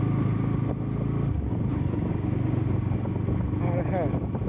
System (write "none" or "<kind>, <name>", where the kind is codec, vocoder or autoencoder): none